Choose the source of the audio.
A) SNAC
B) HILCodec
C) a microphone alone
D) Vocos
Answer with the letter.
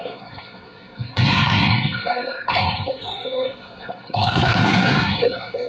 A